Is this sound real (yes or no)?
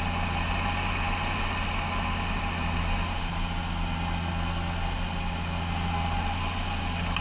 yes